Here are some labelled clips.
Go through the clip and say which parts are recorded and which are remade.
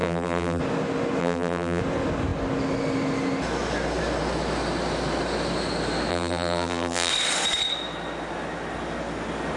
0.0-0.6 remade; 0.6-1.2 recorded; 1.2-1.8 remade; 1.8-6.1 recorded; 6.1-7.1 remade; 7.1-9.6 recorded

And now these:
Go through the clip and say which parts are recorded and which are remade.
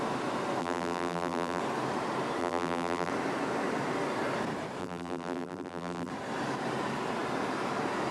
0.0-0.6 recorded; 0.6-1.6 remade; 1.6-2.4 recorded; 2.4-3.1 remade; 3.1-4.8 recorded; 4.8-6.1 remade; 6.1-8.1 recorded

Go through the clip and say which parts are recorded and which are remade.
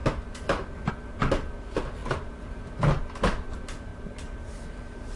0.0-2.0 recorded; 2.0-3.0 remade; 3.0-3.9 recorded; 3.9-5.2 remade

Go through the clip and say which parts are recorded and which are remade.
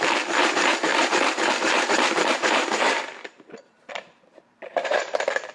0.0-5.5 remade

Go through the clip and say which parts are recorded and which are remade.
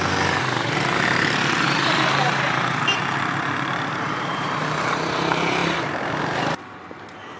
0.0-5.6 remade; 5.6-7.4 recorded